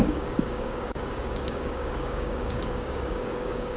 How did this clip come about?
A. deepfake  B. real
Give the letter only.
A